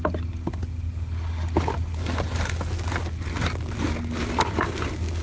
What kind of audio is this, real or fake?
real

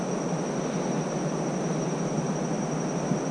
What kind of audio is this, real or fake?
real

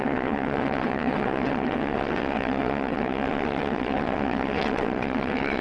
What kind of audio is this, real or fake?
fake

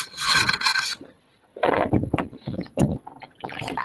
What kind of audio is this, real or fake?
fake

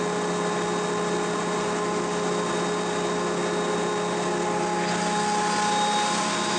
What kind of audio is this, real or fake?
real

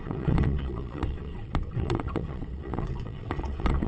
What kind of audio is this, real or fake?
fake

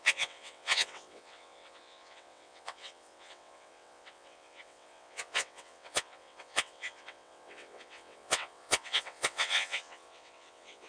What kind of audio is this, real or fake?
fake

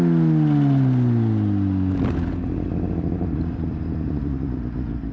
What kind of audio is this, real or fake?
real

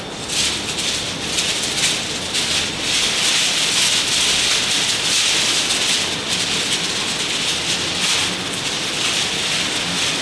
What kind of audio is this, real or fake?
real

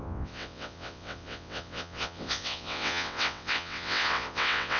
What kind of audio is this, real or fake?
fake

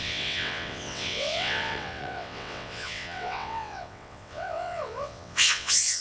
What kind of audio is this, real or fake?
fake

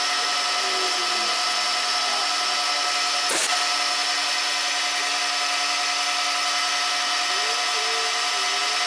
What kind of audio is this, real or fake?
real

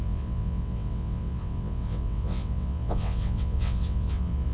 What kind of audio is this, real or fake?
fake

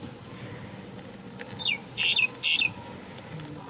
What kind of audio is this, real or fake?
real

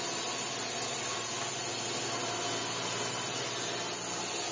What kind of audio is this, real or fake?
real